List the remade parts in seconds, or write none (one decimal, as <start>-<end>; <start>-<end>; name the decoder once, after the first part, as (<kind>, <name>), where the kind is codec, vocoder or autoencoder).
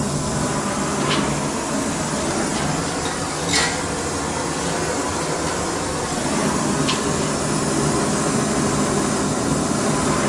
none